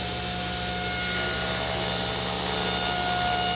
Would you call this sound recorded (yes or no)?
yes